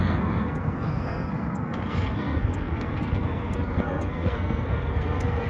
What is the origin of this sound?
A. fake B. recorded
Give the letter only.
A